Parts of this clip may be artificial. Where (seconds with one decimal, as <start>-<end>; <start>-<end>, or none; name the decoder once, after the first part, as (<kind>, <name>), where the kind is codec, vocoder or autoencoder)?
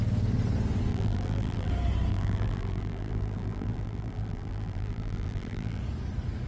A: 0.9-1.7 (vocoder, BigVGAN v2); 2.1-5.8